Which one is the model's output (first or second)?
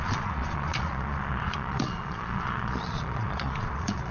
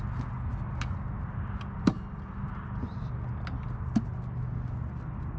first